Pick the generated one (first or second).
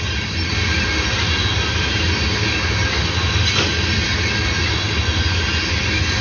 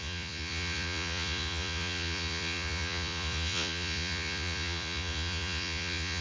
second